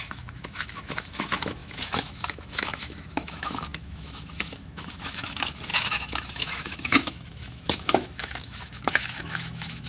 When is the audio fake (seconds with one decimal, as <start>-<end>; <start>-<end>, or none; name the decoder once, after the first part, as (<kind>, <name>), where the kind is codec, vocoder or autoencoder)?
0.0-9.9 (autoencoder, DAC-VAE)